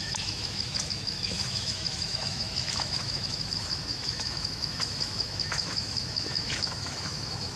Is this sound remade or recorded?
remade